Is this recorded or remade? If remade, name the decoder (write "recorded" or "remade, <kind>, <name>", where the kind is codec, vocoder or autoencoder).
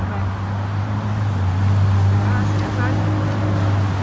recorded